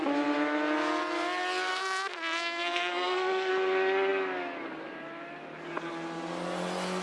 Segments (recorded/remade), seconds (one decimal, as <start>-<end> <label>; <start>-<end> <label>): 0.0-1.7 recorded; 1.7-3.5 remade; 3.5-7.0 recorded